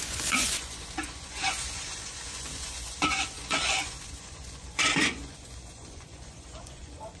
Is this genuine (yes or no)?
no